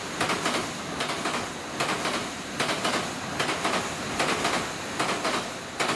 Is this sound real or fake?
real